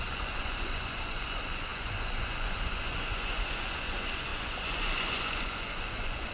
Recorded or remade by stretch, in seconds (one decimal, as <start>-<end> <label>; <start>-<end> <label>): 0.0-6.3 remade